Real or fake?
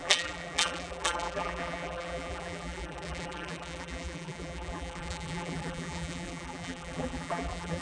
fake